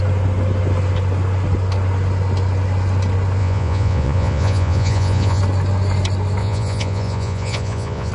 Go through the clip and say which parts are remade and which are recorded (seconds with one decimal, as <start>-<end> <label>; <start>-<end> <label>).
0.0-3.4 recorded; 3.4-5.4 remade; 5.4-6.4 recorded; 6.4-8.1 remade

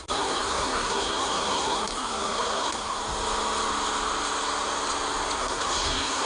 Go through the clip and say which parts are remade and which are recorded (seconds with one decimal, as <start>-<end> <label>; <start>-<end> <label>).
0.0-3.0 remade; 3.0-5.4 recorded; 5.4-6.3 remade

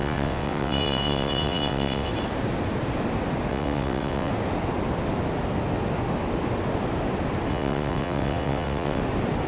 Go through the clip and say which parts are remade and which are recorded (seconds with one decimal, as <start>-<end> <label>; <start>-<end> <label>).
0.0-2.1 remade; 2.1-3.5 recorded; 3.5-4.3 remade; 4.3-7.5 recorded; 7.5-9.0 remade; 9.0-9.5 recorded